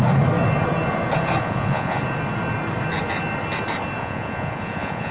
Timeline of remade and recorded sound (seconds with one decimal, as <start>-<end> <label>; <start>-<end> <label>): 0.0-1.4 recorded; 1.4-2.0 remade; 2.0-4.0 recorded; 4.0-5.1 remade